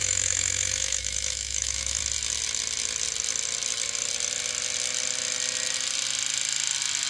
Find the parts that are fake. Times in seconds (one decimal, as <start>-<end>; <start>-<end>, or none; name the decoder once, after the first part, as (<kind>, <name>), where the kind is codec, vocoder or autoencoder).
0.0-2.0 (autoencoder, DAC-VAE)